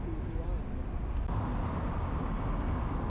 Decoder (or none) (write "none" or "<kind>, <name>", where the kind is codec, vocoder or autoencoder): none